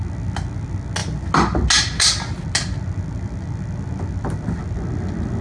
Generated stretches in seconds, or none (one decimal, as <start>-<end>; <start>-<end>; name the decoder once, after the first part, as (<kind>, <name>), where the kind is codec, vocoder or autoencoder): none